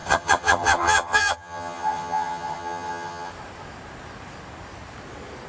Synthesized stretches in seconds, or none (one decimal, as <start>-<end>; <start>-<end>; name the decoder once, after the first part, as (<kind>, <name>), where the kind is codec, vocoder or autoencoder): 0.0-3.3 (vocoder, HiFi-GAN)